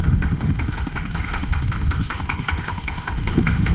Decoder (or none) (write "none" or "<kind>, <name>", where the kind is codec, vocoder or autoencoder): autoencoder, DAC-VAE